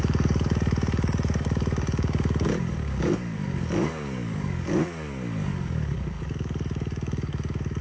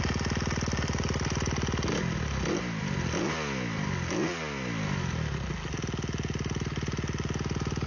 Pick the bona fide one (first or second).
second